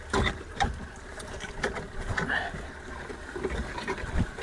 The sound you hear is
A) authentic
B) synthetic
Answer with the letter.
A